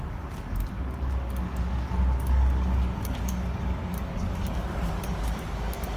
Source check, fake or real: fake